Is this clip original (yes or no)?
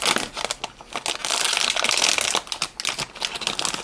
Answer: yes